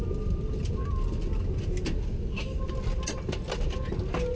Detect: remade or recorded recorded